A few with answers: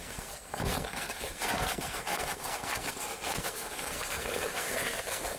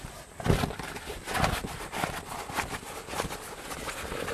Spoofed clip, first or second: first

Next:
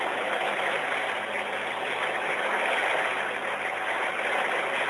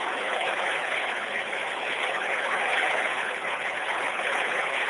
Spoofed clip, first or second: second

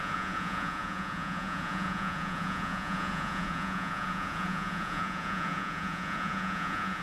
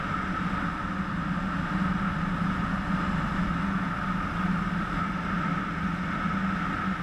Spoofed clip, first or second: first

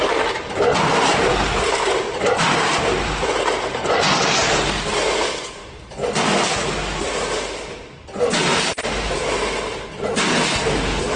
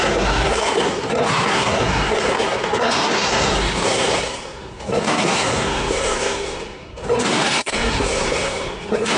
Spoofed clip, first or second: second